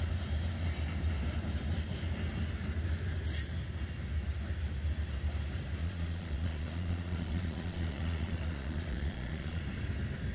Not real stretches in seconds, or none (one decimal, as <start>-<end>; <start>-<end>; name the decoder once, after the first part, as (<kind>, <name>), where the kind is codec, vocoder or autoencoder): 5.8-9.6 (vocoder, Vocos)